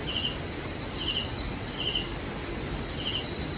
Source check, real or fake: real